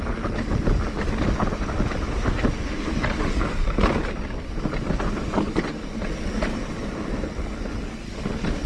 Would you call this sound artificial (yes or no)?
no